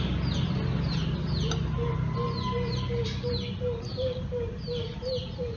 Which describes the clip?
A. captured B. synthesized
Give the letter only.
A